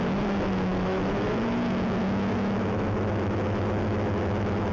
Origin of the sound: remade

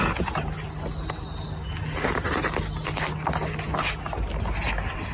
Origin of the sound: recorded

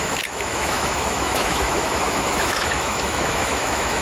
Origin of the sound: remade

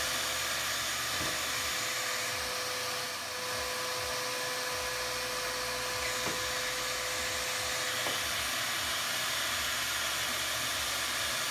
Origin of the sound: recorded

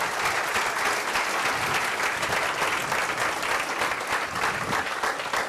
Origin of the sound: recorded